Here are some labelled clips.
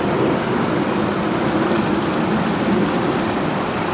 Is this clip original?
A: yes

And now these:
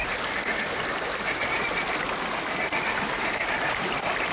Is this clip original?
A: yes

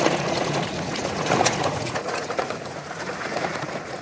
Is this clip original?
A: no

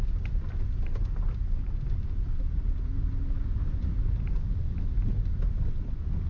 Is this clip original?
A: yes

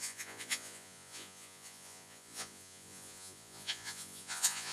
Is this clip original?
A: no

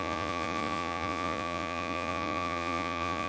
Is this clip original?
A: no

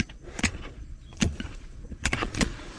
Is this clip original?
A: no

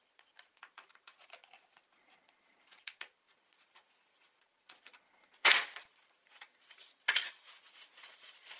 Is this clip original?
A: no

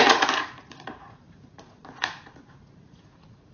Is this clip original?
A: no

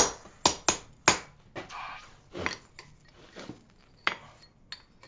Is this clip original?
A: yes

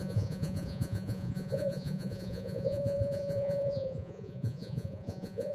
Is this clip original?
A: no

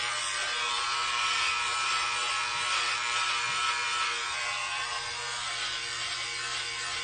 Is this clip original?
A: no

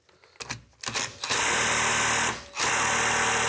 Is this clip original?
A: yes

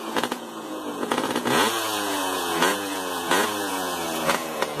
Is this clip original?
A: no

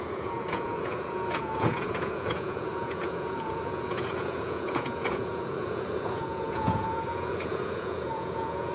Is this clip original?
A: no